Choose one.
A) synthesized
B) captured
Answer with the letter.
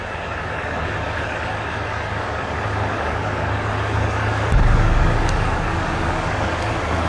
A